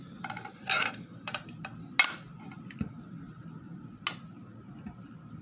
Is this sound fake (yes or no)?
no